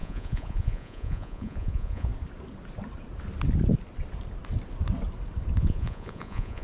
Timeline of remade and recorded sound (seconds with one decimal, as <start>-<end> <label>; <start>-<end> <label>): 0.0-2.1 remade; 2.1-5.6 recorded; 5.6-6.6 remade